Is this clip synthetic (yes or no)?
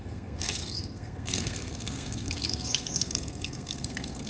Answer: yes